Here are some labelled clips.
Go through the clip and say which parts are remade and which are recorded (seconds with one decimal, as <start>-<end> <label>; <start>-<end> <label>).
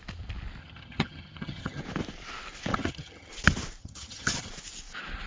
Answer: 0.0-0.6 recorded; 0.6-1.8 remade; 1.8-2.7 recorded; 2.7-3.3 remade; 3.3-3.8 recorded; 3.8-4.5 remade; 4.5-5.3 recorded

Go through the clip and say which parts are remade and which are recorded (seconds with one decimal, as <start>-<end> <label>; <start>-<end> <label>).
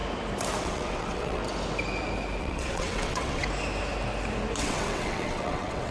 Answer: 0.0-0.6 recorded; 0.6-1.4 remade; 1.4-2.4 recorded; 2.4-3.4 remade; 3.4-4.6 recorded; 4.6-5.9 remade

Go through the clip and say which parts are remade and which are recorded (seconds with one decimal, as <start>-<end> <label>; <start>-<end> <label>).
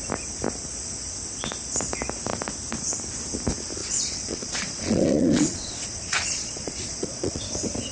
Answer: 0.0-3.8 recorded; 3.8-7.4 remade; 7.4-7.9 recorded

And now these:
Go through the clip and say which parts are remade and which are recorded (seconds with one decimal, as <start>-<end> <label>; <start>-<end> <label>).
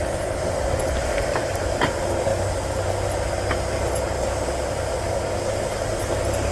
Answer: 0.0-2.3 remade; 2.3-6.5 recorded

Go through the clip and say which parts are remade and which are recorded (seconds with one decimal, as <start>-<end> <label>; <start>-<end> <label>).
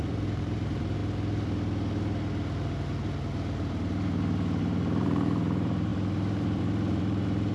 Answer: 0.0-1.0 remade; 1.0-4.6 recorded; 4.6-7.5 remade